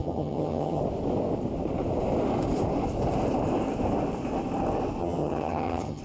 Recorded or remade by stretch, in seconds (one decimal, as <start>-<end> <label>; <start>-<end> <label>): 0.0-0.8 remade; 0.8-5.0 recorded; 5.0-6.0 remade